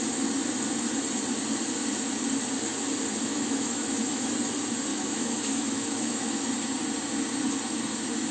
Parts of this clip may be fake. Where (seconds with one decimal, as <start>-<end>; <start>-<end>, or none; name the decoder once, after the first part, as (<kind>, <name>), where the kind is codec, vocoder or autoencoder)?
3.3-4.3 (autoencoder, DAC-VAE); 4.9-6.5